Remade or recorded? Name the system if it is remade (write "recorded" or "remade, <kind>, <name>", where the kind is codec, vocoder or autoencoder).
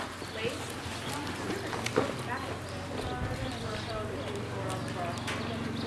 recorded